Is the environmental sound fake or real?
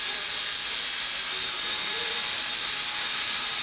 real